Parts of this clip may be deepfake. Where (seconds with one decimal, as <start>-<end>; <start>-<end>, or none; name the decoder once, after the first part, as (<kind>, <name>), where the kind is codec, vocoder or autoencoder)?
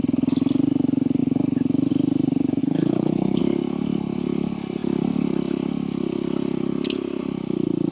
2.6-3.4 (codec, HILCodec)